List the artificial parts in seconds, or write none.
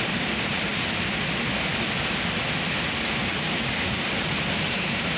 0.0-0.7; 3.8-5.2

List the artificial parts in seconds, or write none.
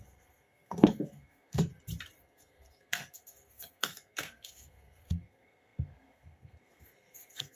0.0-1.7; 2.2-7.6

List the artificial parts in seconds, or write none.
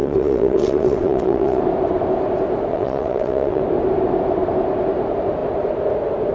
0.0-1.6; 2.7-3.6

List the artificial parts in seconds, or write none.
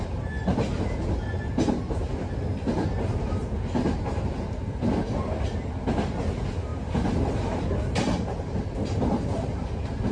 none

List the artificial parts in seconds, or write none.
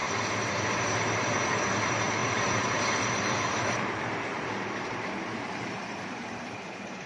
0.0-7.1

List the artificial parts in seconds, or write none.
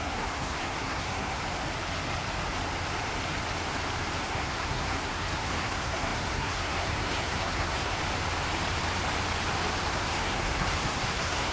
0.0-1.4; 4.2-8.0; 9.9-11.5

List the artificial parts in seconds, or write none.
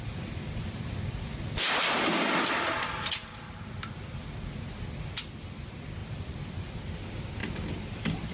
none